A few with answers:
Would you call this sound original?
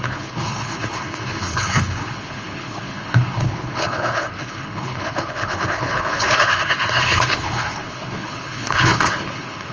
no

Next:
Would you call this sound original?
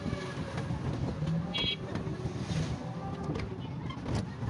yes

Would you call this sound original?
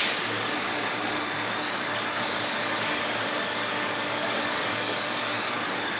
no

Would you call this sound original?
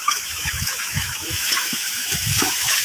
no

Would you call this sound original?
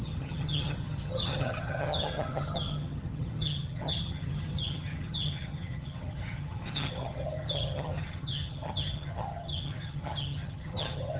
no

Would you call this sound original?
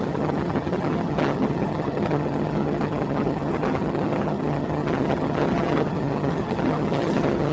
no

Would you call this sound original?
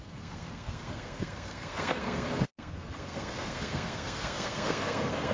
no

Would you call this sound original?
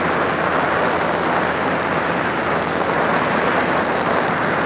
yes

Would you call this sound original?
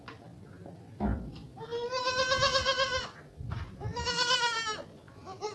yes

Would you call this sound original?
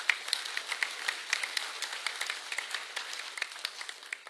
yes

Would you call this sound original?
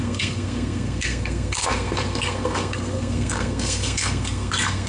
no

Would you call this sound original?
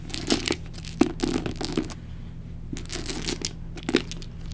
yes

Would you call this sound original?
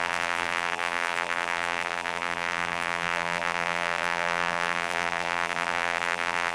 no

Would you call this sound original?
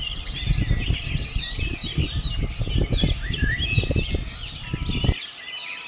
yes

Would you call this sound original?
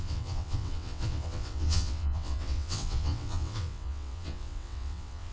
no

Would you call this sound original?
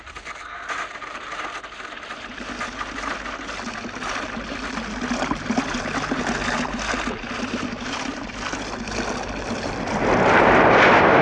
yes